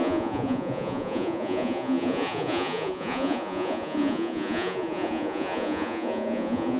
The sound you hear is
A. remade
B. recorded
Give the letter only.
A